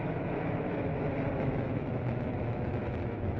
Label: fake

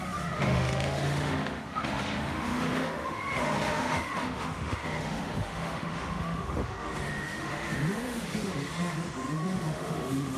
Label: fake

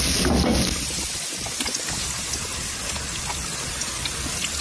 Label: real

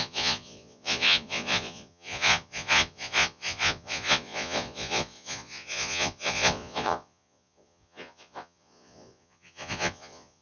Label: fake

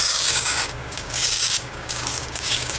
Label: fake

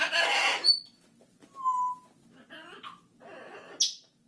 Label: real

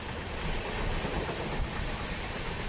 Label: real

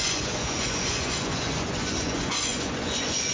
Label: fake